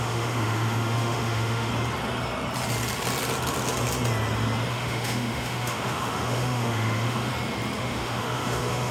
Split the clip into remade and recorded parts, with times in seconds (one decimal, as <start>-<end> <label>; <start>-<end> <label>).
0.0-1.7 remade; 1.7-4.7 recorded; 4.7-7.3 remade; 7.3-7.8 recorded; 7.8-8.9 remade